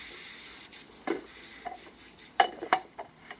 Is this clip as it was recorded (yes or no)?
yes